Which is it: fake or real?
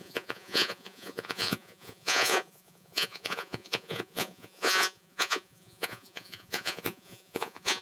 fake